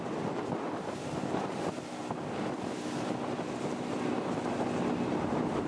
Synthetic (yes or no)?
no